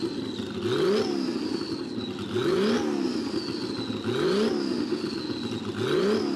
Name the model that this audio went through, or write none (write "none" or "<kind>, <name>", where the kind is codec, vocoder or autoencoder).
none